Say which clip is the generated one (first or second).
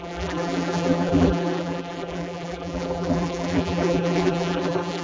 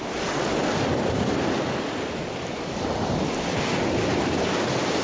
first